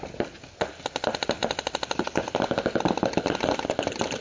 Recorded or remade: recorded